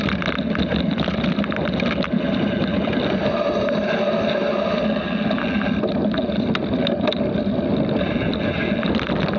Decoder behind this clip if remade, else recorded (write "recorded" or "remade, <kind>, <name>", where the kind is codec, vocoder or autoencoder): recorded